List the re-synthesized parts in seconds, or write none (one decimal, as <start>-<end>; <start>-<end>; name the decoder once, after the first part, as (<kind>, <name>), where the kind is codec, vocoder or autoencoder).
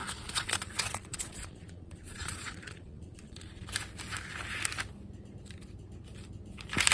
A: 0.0-3.7 (vocoder, Vocos)